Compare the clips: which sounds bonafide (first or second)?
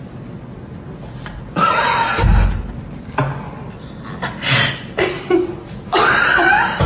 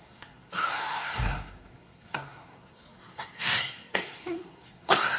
first